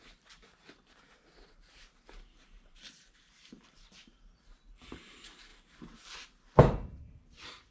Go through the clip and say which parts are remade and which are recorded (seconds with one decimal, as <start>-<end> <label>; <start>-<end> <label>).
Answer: 0.0-7.7 remade